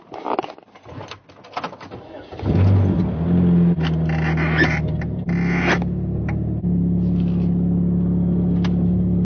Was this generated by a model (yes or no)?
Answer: no